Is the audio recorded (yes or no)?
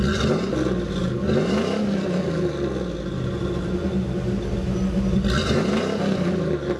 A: yes